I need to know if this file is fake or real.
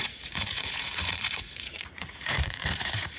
fake